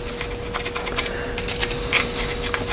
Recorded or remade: recorded